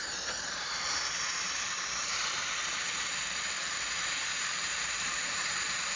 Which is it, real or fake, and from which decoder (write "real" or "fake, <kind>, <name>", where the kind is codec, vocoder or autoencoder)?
fake, vocoder, BigVGAN v2